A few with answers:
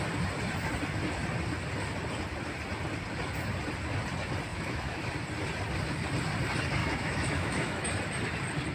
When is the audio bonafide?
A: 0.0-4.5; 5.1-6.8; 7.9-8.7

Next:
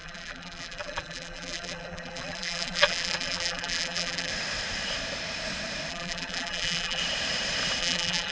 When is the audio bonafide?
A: 4.3-5.9; 7.0-7.8

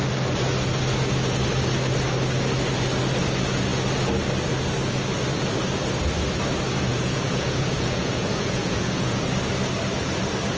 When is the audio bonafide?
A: 0.0-6.9; 9.2-10.6

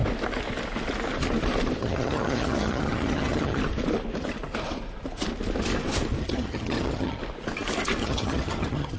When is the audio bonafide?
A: 0.0-1.8; 3.6-6.2; 7.2-8.0